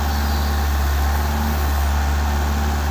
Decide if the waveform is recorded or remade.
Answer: recorded